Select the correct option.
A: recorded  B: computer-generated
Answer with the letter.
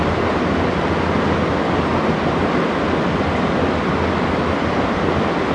A